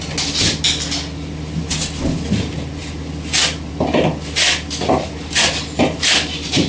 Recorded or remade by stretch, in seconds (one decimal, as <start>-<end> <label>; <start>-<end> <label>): 0.0-6.7 recorded